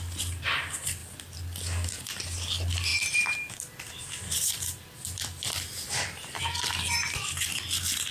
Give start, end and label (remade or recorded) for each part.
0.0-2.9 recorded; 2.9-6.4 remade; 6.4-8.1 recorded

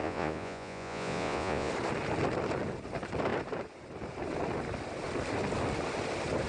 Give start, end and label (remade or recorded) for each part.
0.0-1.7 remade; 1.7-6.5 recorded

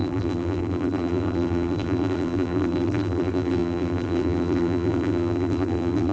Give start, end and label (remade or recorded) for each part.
0.0-6.1 remade

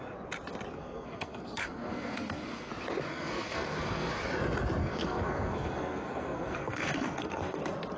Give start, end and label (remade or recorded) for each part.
0.0-0.7 recorded; 0.7-2.7 remade; 2.7-3.1 recorded; 3.1-4.1 remade; 4.1-4.8 recorded; 4.8-7.6 remade; 7.6-8.0 recorded

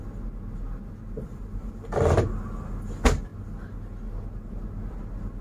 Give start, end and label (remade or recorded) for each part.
0.0-5.4 recorded